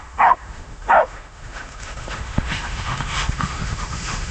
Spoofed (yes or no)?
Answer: yes